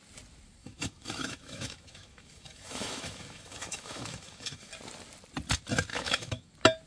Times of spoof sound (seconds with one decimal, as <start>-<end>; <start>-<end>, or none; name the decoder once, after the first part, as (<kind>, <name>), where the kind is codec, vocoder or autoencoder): 0.6-4.7 (autoencoder, DAC-VAE); 5.9-6.5